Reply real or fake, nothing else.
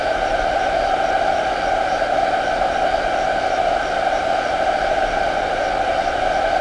real